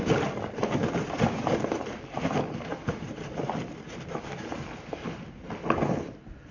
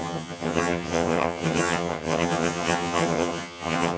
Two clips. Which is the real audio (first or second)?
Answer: first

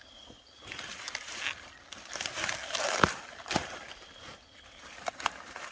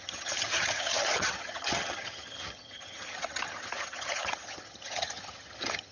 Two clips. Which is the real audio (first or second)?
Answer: first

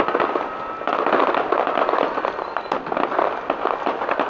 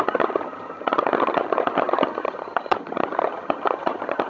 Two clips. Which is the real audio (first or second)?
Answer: first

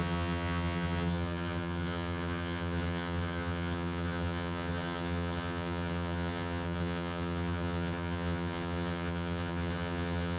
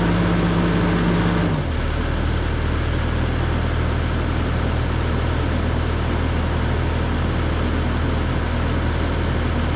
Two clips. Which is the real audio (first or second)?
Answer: second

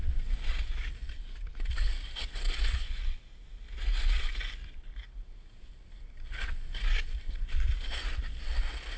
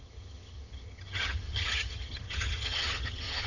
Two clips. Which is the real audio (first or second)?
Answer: first